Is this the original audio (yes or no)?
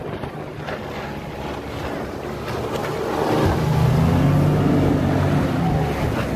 yes